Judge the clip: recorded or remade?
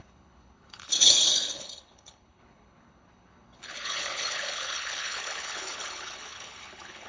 remade